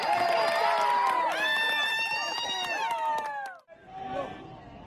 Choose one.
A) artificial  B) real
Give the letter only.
B